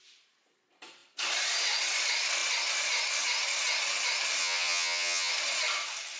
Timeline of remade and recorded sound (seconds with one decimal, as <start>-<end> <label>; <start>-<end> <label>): 0.0-4.4 recorded; 4.4-5.3 remade; 5.3-6.2 recorded